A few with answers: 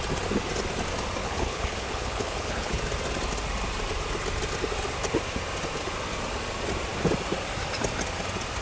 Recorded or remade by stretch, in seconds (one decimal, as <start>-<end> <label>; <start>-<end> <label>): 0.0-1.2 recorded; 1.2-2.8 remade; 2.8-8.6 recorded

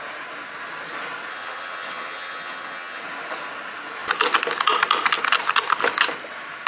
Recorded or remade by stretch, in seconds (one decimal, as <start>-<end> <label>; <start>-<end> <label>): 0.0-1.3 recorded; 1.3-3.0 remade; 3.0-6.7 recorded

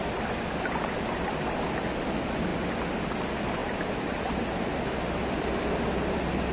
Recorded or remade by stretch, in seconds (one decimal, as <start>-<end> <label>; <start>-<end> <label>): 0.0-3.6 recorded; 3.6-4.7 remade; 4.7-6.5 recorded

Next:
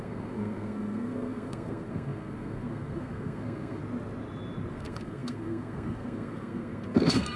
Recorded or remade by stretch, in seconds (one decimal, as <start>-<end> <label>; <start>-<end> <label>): 0.0-3.8 remade; 3.8-4.7 recorded; 4.7-7.4 remade